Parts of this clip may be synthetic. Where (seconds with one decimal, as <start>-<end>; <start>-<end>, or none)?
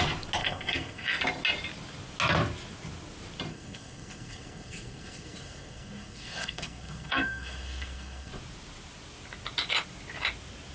0.4-1.2; 3.5-8.3